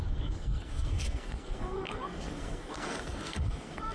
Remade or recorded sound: remade